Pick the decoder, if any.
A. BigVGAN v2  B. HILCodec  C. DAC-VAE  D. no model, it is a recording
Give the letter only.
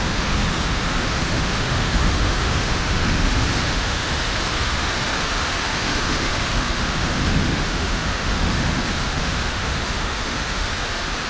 C